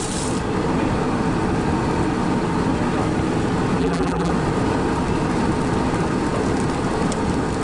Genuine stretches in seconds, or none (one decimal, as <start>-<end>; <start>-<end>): 0.0-3.8; 4.3-7.6